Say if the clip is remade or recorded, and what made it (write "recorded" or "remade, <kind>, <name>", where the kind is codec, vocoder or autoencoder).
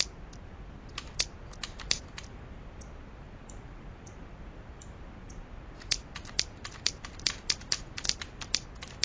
remade, vocoder, BigVGAN v2